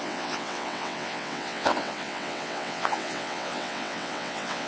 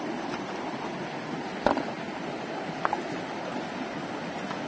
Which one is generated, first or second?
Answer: first